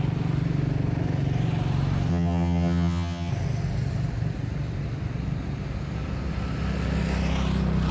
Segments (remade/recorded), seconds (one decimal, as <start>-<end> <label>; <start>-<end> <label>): 0.0-2.1 recorded; 2.1-3.3 remade; 3.3-7.9 recorded